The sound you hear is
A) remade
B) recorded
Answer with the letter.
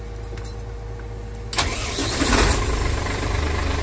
B